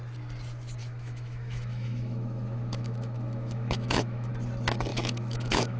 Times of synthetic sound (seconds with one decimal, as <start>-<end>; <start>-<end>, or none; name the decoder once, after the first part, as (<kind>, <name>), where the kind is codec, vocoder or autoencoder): 0.8-4.3 (autoencoder, DAC-VAE); 4.9-5.8